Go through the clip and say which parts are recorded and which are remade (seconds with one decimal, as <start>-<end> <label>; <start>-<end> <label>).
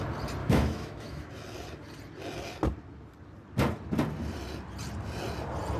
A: 0.0-0.4 recorded; 0.4-1.3 remade; 1.3-5.8 recorded